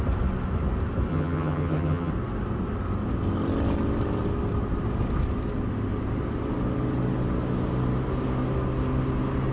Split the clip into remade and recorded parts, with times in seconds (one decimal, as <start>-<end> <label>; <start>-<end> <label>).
0.0-1.1 recorded; 1.1-2.1 remade; 2.1-9.5 recorded